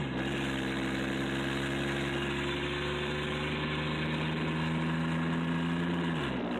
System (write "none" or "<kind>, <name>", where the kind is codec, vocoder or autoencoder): none